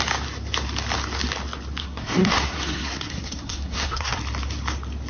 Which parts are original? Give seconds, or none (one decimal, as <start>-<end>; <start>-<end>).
0.0-1.8; 4.2-5.1